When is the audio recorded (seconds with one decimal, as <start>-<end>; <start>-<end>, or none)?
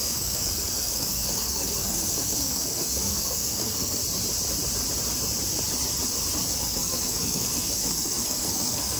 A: 4.0-6.4